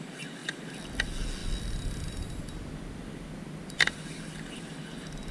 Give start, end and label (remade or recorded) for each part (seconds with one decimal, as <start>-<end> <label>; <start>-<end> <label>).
0.0-5.3 recorded

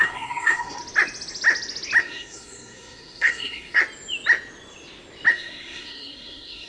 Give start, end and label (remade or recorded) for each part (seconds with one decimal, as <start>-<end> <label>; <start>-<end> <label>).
0.0-0.8 remade; 0.8-2.0 recorded; 2.0-3.8 remade; 3.8-5.3 recorded; 5.3-6.7 remade

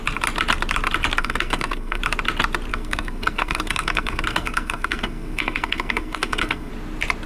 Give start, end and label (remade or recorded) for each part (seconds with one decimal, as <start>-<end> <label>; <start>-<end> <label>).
0.0-1.2 recorded; 1.2-2.0 remade; 2.0-2.7 recorded; 2.7-6.7 remade; 6.7-7.3 recorded